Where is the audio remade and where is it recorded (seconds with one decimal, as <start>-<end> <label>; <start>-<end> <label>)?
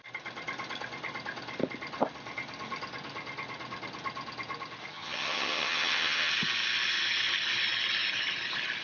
0.0-4.9 recorded; 4.9-6.3 remade; 6.3-8.8 recorded